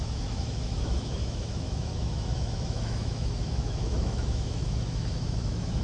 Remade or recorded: remade